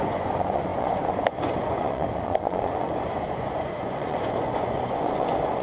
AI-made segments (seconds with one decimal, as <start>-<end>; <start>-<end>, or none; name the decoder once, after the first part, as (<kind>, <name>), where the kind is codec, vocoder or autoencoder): 0.0-5.6 (vocoder, Vocos)

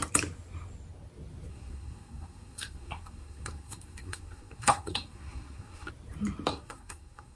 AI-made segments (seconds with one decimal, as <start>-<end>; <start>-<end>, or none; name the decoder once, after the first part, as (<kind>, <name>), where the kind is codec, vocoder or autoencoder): 1.5-5.9 (codec, SNAC); 6.5-7.4